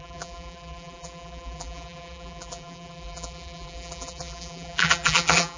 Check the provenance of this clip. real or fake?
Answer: fake